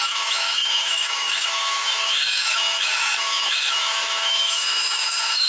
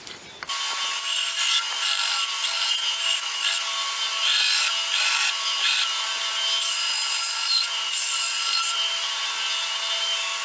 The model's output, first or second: first